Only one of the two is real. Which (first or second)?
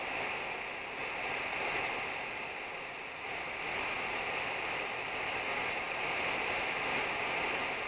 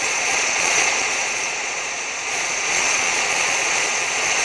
first